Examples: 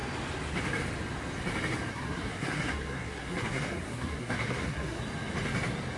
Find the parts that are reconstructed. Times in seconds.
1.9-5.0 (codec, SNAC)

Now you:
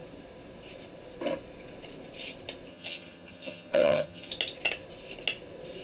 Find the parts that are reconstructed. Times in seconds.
2.7-4.3 (vocoder, HiFi-GAN)